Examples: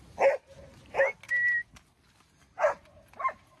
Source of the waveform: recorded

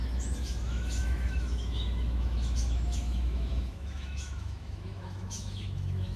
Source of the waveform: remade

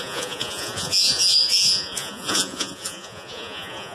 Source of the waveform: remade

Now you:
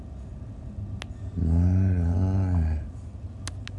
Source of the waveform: recorded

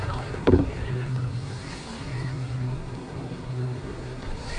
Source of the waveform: remade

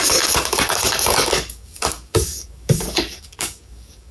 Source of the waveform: remade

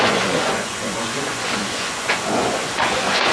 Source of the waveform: remade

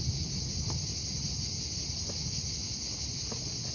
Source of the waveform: recorded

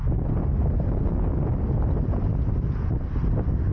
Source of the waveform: recorded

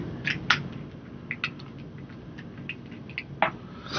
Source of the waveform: recorded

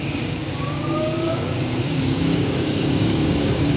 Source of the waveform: remade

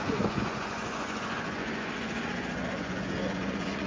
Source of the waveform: remade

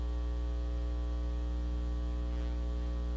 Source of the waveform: recorded